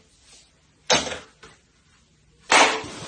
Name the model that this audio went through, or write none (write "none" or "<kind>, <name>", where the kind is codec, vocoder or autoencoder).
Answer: none